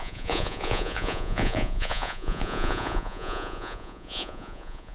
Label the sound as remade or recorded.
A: remade